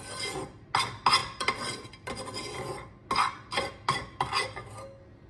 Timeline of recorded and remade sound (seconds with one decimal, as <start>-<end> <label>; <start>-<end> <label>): 0.0-1.2 recorded; 1.2-2.1 remade; 2.1-5.3 recorded